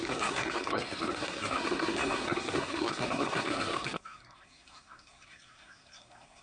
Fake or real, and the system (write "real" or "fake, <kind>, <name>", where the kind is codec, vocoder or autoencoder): fake, codec, SNAC